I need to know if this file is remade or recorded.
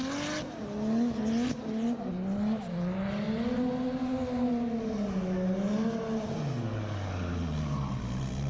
recorded